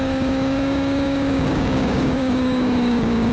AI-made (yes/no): yes